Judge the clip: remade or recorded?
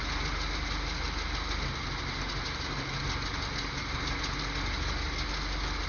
recorded